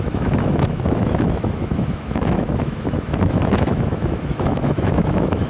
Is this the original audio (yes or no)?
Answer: no